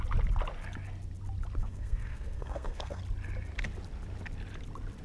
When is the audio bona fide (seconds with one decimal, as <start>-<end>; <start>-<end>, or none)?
0.0-1.6; 3.0-5.0